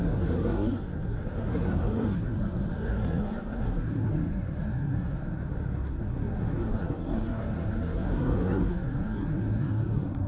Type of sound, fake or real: fake